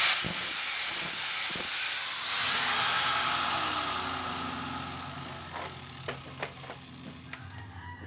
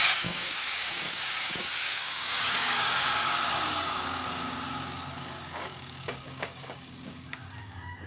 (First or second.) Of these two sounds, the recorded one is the first